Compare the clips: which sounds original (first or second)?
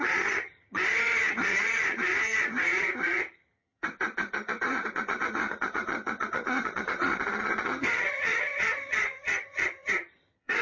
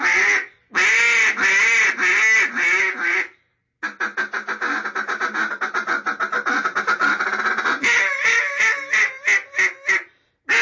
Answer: second